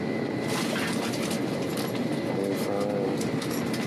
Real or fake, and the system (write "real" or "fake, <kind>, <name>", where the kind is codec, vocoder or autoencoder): real